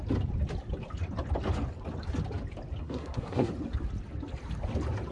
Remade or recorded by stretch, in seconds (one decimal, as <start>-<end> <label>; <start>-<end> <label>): 0.0-2.8 recorded; 2.8-3.5 remade; 3.5-5.1 recorded